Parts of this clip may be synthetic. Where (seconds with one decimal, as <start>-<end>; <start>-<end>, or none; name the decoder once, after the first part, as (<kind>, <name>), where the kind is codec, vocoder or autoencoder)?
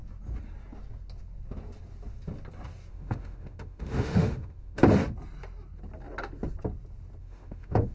2.9-4.8 (autoencoder, DAC-VAE); 7.2-7.9